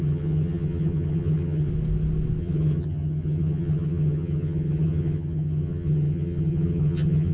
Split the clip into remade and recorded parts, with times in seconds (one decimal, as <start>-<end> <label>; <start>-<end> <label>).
0.0-1.7 remade; 1.7-2.4 recorded; 2.4-7.3 remade